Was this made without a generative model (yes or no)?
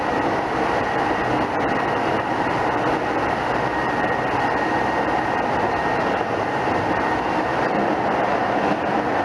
no